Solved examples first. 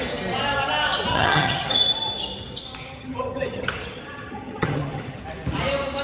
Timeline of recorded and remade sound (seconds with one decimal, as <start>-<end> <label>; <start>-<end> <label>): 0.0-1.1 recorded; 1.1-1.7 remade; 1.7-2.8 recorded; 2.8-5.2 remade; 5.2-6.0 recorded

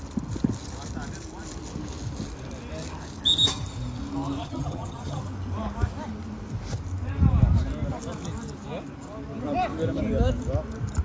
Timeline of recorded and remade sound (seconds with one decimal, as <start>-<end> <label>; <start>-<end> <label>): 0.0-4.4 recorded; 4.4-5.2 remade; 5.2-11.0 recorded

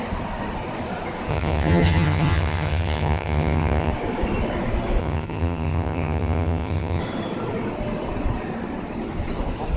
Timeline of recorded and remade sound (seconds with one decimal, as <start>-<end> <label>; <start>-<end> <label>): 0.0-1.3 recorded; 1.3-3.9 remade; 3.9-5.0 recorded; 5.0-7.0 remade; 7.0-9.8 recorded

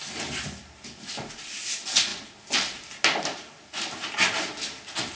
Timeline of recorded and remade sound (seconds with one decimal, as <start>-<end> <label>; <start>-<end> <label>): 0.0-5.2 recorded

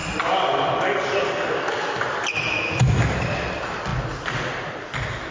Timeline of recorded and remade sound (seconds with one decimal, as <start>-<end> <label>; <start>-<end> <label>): 0.0-5.3 recorded